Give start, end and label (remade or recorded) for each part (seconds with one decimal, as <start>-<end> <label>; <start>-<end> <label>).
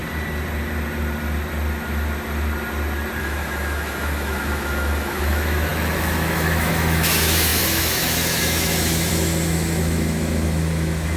0.0-3.2 recorded; 3.2-11.2 remade